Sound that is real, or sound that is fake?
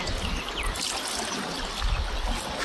real